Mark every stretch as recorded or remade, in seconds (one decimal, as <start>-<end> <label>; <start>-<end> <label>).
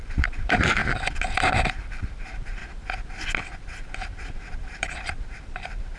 0.0-0.8 remade; 0.8-1.4 recorded; 1.4-2.6 remade; 2.6-4.3 recorded; 4.3-6.0 remade